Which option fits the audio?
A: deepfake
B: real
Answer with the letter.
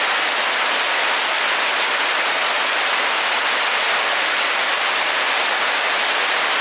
B